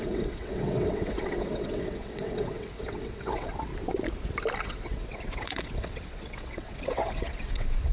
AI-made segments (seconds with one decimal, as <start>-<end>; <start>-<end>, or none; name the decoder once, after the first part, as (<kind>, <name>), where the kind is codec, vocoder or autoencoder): 0.0-3.7 (vocoder, WaveNeXt); 4.6-7.9